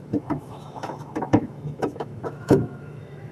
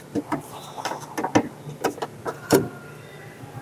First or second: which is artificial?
first